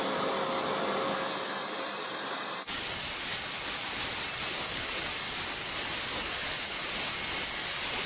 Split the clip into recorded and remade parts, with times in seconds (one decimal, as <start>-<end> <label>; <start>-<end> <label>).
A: 0.0-1.6 recorded; 1.6-2.7 remade; 2.7-8.1 recorded